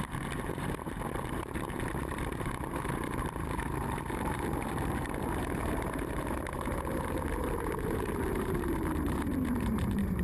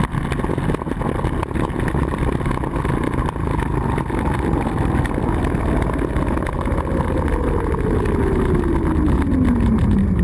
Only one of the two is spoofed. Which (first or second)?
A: first